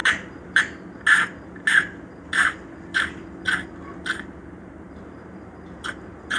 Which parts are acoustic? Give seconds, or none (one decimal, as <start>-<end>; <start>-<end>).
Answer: 0.6-4.4; 5.8-6.4

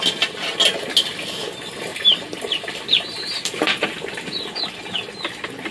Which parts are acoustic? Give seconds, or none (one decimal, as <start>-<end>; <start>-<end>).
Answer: 0.0-1.9; 4.6-5.7

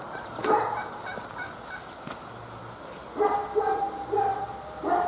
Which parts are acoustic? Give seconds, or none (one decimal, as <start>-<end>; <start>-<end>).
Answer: 0.0-5.1

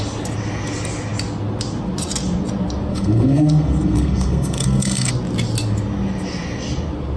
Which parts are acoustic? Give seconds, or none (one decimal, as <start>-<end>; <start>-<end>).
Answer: 0.0-2.9; 5.1-7.2

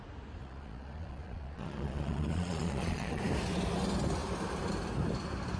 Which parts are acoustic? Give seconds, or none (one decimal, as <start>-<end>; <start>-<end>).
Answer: 0.0-0.4; 3.2-5.6

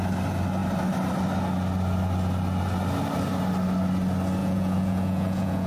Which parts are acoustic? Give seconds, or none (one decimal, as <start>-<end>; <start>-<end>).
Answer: 0.0-4.4

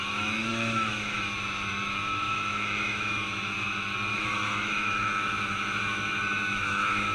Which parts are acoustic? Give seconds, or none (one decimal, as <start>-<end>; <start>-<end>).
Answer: none